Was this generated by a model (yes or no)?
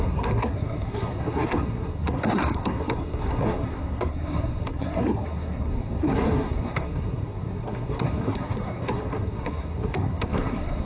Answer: yes